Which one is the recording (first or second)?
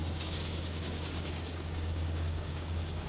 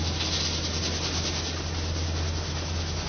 second